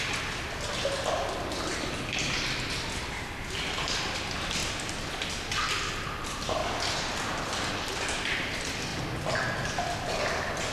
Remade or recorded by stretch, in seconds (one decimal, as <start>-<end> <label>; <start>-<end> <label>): 0.0-10.7 recorded